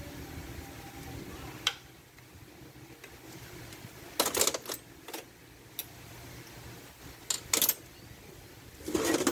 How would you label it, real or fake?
real